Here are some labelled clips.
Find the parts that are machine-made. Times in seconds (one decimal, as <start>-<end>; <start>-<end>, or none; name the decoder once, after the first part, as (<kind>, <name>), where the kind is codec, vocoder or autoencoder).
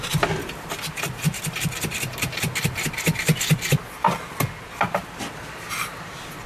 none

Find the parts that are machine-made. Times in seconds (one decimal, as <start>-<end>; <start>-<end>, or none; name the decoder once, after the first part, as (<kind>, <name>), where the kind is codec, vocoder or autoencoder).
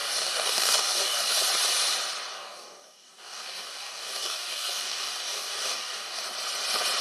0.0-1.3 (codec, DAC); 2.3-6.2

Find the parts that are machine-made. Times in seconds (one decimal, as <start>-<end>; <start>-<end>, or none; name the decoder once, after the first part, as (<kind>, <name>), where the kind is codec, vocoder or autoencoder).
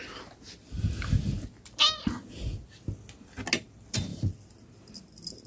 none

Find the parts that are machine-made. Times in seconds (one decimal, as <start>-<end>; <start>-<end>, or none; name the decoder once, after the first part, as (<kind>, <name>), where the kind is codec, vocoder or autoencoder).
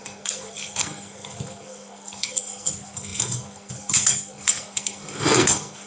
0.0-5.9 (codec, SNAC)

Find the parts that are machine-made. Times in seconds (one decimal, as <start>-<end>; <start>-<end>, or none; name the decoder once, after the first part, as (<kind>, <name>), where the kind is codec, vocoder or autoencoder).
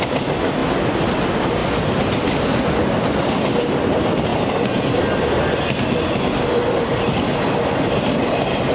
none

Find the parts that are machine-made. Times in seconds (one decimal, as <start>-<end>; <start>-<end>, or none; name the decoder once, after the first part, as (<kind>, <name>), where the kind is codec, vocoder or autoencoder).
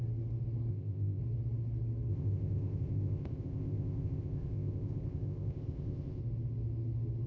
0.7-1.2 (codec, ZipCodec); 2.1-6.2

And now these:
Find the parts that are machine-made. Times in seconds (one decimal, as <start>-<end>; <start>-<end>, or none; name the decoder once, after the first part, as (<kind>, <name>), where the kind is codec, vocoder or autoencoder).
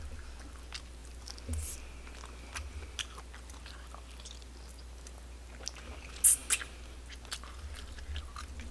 none